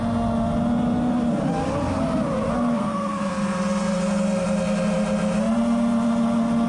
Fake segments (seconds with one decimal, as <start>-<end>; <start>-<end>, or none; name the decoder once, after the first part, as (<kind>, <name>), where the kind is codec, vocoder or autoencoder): 2.7-3.2 (codec, SNAC)